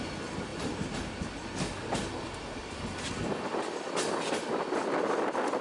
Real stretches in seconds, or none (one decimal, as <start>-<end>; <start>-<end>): 0.0-5.6